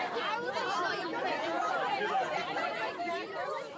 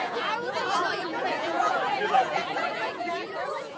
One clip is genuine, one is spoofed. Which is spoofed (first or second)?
second